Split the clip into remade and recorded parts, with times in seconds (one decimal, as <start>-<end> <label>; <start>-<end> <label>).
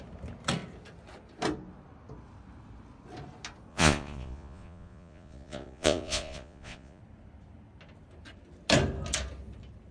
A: 0.0-3.7 recorded; 3.7-7.0 remade; 7.0-9.9 recorded